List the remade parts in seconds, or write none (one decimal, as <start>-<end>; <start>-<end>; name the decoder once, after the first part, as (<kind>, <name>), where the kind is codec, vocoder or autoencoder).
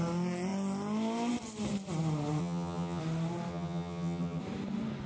2.4-3.0 (vocoder, HiFi-GAN); 3.5-4.4